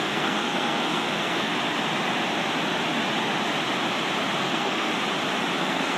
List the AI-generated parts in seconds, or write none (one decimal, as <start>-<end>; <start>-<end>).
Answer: 0.0-1.5; 4.4-4.9; 5.6-6.0